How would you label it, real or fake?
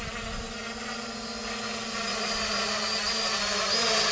real